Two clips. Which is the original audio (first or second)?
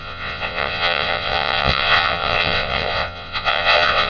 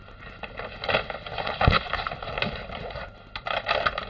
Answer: second